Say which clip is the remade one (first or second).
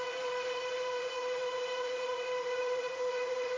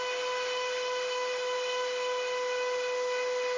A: first